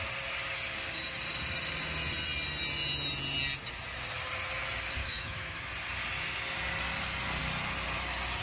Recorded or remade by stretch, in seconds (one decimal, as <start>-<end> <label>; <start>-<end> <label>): 0.0-5.0 recorded; 5.0-5.7 remade; 5.7-8.4 recorded